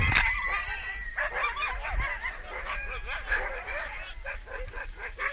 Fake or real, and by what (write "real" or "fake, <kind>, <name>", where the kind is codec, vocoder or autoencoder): fake, vocoder, BigVGAN v2